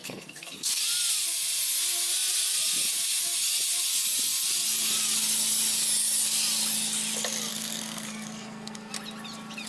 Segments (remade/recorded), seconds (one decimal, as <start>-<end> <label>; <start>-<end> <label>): 0.0-0.8 remade; 0.8-7.5 recorded; 7.5-8.9 remade; 8.9-9.7 recorded